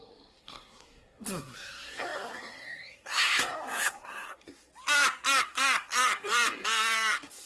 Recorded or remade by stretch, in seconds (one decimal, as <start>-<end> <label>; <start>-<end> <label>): 0.0-4.7 remade; 4.7-5.4 recorded; 5.4-7.5 remade